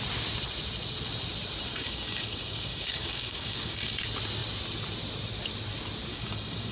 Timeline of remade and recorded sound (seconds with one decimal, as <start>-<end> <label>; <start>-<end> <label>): 0.0-1.7 recorded; 1.7-4.0 remade; 4.0-6.1 recorded; 6.1-6.7 remade

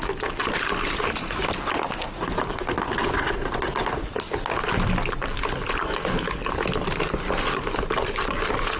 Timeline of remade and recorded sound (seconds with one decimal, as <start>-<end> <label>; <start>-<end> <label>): 0.0-8.8 recorded

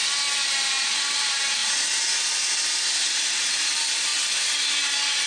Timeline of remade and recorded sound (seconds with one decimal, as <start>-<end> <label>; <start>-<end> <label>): 0.0-0.7 recorded; 0.7-1.6 remade; 1.6-3.2 recorded; 3.2-4.1 remade; 4.1-5.3 recorded